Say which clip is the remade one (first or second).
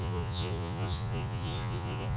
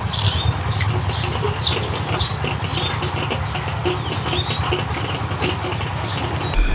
first